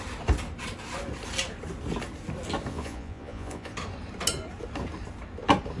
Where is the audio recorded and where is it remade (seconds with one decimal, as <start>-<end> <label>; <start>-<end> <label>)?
0.0-2.7 recorded; 2.7-3.7 remade; 3.7-5.8 recorded